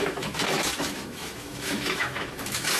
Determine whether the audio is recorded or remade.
remade